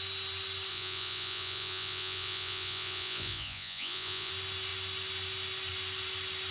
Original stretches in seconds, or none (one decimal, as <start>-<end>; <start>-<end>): 0.0-0.7; 4.3-6.5

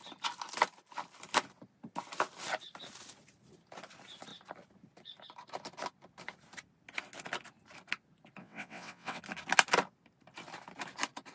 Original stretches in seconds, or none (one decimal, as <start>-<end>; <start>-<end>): 0.0-8.4; 9.2-11.3

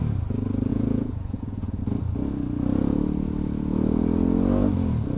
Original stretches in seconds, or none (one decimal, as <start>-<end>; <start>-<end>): 0.0-0.7; 1.8-5.2

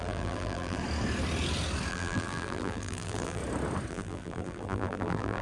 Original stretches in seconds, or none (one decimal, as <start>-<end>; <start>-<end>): 0.8-1.9; 3.4-3.9

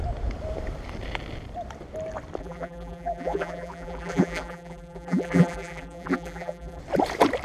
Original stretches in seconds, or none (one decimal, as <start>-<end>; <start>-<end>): 0.0-2.4; 6.8-7.4

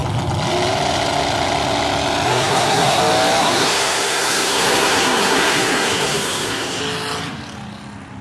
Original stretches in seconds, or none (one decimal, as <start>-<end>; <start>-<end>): 0.0-2.3; 3.0-3.4; 6.8-8.2